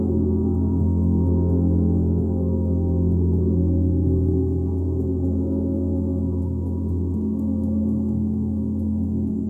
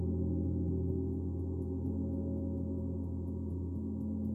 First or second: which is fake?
first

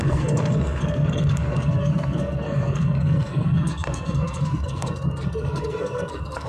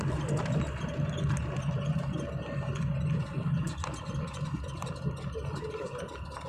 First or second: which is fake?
first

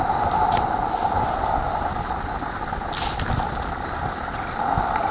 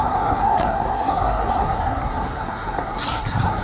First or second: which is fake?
second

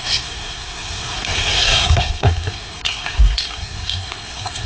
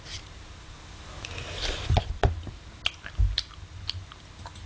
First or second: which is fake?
first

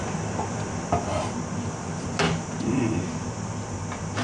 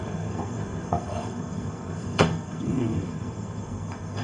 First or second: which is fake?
second